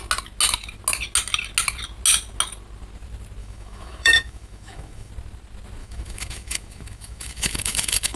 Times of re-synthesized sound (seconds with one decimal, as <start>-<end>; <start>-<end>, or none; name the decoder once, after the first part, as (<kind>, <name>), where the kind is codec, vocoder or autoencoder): 3.4-5.1 (autoencoder, DAC-VAE); 5.8-8.2

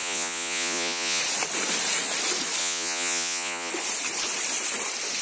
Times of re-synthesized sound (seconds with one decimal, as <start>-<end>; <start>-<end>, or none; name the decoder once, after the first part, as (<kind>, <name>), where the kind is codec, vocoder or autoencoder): 0.0-1.2 (vocoder, Vocos); 2.6-3.7

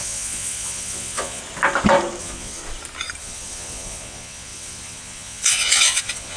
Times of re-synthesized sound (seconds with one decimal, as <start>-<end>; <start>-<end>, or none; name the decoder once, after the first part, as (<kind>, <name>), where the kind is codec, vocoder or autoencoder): 0.0-1.4 (vocoder, Vocos); 2.2-2.6; 3.2-6.4